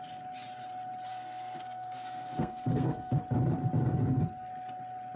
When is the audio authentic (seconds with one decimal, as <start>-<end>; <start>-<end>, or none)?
0.0-1.1; 3.2-5.2